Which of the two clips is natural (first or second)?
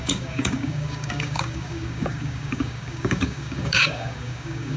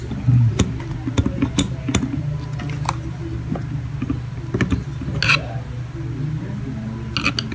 second